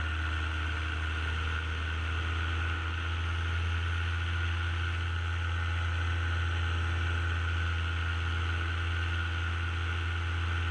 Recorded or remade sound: recorded